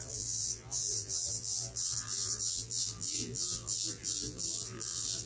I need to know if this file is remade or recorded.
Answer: remade